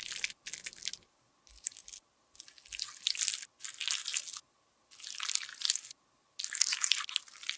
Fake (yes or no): no